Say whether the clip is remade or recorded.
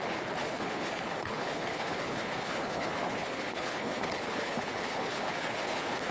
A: remade